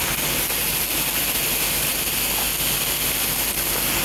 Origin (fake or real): real